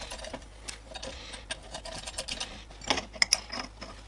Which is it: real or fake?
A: real